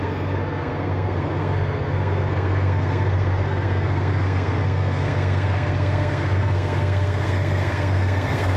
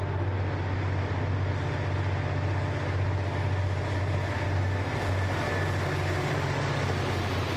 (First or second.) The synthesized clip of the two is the first